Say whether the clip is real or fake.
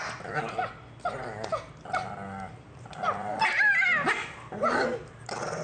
real